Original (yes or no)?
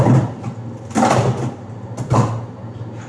yes